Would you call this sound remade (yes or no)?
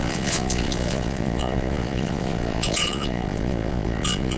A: yes